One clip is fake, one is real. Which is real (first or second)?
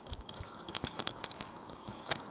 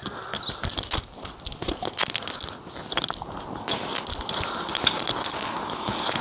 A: second